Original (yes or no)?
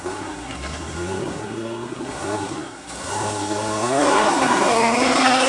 no